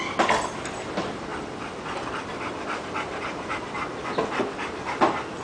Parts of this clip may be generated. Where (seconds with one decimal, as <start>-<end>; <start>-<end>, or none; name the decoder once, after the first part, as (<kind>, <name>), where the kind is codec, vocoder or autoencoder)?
none